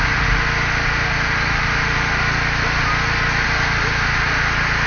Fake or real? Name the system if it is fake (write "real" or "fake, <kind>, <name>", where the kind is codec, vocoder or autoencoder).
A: real